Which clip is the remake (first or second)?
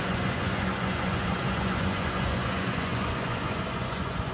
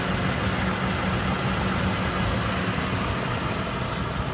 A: first